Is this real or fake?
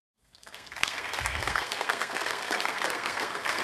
fake